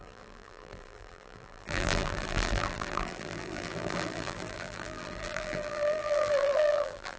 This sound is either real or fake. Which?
fake